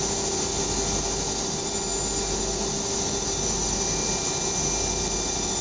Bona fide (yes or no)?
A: yes